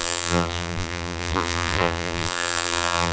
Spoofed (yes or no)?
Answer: yes